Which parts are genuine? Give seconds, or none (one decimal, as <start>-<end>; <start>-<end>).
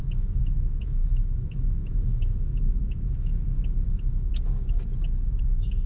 3.3-5.4